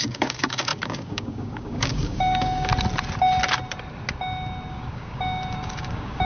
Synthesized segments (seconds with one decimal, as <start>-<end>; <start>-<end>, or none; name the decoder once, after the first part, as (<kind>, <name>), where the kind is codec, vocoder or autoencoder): 0.0-2.7 (codec, DAC); 4.7-6.2